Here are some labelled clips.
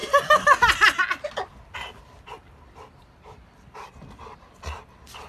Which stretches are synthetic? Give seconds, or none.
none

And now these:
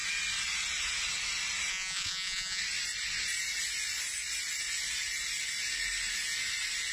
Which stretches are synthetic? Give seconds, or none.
1.7-2.6

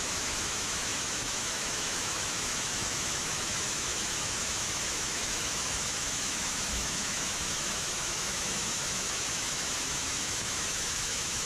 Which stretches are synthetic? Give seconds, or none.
0.0-11.5

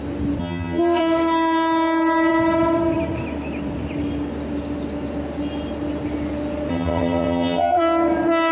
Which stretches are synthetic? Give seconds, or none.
0.4-1.0; 6.7-7.8